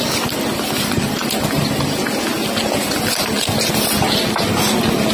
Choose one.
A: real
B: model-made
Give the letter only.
A